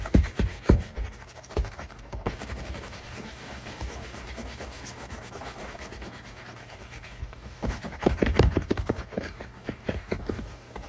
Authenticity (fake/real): fake